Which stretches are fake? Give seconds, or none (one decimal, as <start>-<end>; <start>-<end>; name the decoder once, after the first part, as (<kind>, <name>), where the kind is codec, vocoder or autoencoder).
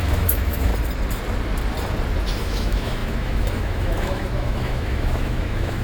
0.0-0.7 (autoencoder, DAC-VAE); 2.4-5.8